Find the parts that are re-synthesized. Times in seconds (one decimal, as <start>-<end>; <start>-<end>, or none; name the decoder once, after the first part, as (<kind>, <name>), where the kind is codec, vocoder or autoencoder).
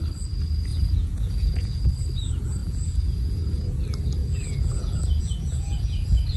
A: 0.7-1.9 (vocoder, Vocos); 2.6-3.8; 4.2-6.4